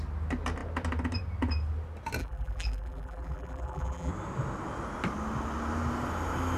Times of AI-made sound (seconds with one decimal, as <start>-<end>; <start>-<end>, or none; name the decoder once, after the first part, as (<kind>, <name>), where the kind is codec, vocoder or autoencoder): 2.2-4.1 (vocoder, BigVGAN v2)